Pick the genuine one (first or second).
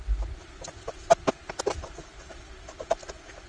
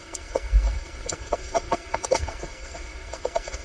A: first